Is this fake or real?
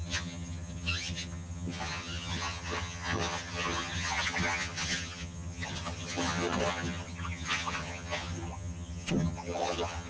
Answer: fake